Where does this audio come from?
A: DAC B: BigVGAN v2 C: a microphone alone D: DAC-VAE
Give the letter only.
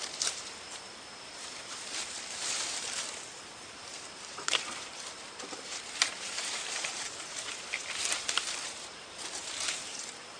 B